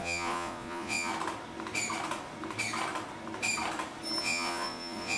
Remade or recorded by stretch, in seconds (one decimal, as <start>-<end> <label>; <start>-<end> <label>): 0.0-1.1 remade; 1.1-4.2 recorded; 4.2-5.2 remade